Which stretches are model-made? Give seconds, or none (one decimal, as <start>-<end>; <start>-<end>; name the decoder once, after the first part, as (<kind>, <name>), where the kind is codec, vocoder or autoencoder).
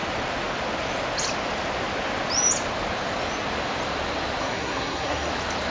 4.4-5.3 (codec, SNAC)